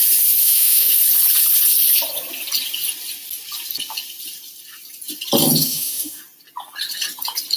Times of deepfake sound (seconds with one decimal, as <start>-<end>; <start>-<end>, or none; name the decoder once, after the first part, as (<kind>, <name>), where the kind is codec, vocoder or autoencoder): 0.4-1.0 (autoencoder, DAC-VAE); 5.6-6.2